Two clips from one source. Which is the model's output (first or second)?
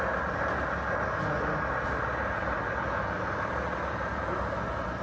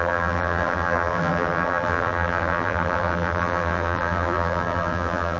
second